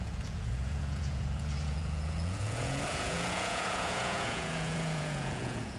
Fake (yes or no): yes